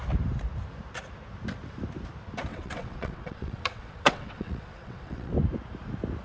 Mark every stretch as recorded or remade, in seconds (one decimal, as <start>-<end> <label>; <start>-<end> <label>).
0.0-2.5 recorded; 2.5-5.3 remade; 5.3-6.2 recorded